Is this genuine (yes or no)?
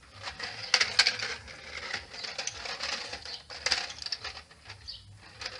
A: yes